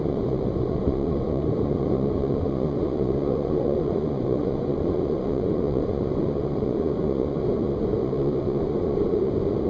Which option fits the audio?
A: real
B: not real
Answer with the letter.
B